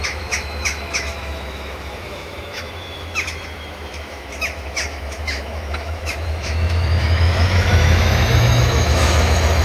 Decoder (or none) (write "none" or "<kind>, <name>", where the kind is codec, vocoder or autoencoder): autoencoder, DAC-VAE